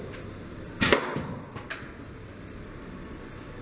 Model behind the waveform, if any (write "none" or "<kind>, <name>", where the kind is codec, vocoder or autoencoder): none